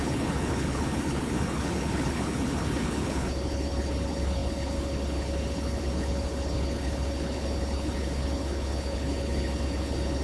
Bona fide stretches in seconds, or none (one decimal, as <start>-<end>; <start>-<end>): none